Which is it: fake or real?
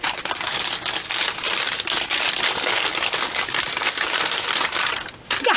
fake